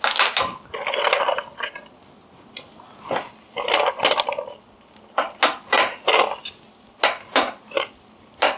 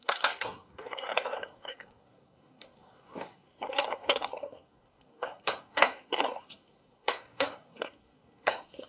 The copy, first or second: second